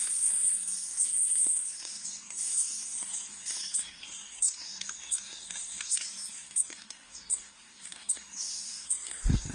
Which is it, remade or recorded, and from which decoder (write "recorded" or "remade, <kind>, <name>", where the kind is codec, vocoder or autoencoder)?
remade, codec, SNAC